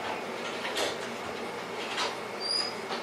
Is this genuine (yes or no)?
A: yes